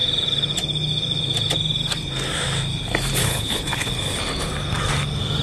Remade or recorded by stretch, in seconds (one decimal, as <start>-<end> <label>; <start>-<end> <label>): 0.0-3.2 recorded; 3.2-3.9 remade; 3.9-5.4 recorded